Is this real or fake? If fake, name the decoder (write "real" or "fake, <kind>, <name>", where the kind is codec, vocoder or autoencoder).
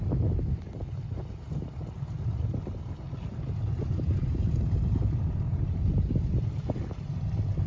real